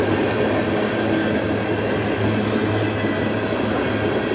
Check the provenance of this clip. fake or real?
real